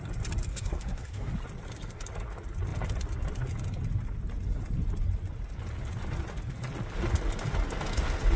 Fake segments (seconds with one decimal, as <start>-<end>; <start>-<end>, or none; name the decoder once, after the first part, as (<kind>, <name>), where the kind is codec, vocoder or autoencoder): 0.5-1.3 (codec, SNAC)

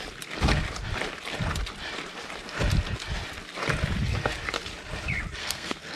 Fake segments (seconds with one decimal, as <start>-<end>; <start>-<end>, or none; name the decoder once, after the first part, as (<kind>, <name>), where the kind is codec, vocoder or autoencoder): 5.4-6.0 (codec, SNAC)

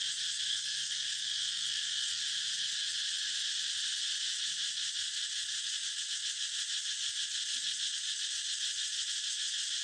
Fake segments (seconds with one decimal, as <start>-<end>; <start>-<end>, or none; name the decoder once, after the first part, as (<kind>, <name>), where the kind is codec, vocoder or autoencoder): 0.5-2.2 (codec, SNAC)

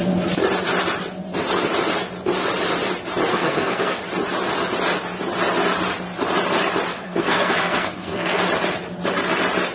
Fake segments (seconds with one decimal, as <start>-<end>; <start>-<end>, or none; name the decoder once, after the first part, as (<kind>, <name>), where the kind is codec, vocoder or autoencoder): 3.3-4.0 (codec, SNAC); 6.9-8.4